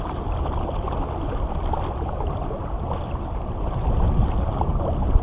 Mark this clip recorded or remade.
recorded